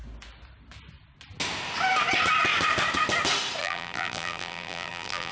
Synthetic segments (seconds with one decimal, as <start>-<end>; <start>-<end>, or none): 3.6-5.3